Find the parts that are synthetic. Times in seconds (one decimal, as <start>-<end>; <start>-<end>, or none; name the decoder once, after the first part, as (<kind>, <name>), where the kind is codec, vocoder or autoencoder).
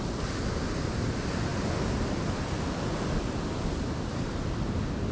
none